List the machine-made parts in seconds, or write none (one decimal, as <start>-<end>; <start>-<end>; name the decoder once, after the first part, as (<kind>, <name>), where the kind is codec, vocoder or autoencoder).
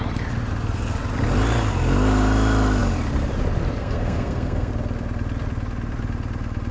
3.8-4.7 (codec, SNAC)